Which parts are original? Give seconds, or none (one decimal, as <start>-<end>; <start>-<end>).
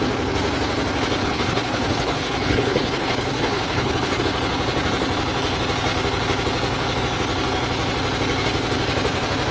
0.0-1.2; 4.2-9.5